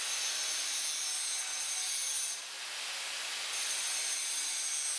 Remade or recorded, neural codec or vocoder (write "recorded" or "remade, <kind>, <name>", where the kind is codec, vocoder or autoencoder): recorded